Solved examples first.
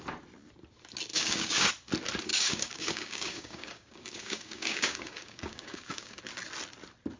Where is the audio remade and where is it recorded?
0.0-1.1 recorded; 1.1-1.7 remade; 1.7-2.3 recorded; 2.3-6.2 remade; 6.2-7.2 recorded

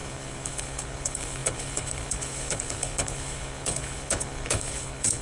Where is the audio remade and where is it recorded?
0.0-5.2 remade